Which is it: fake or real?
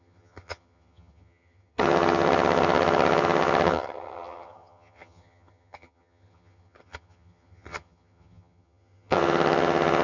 fake